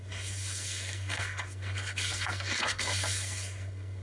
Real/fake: fake